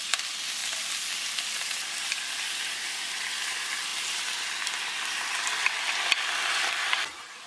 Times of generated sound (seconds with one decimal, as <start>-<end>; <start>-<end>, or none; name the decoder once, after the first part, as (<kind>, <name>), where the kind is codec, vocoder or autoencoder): none